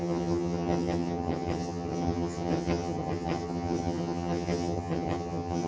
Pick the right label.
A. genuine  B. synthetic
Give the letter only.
B